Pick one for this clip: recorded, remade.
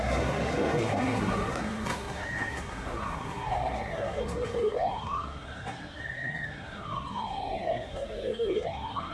remade